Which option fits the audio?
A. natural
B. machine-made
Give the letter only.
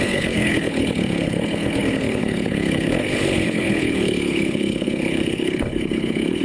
B